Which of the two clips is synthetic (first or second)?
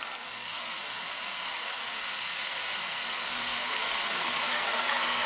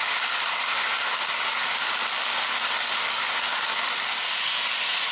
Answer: first